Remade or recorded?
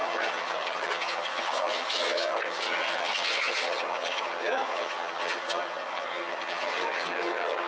remade